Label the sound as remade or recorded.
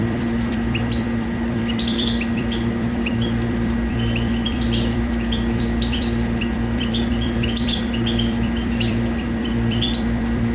remade